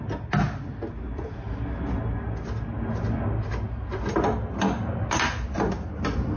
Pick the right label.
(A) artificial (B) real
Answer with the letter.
B